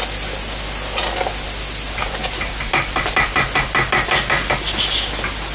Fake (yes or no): no